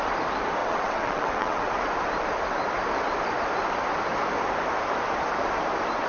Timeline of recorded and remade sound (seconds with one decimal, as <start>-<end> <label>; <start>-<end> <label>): 0.0-0.6 recorded; 0.6-1.7 remade; 1.7-6.1 recorded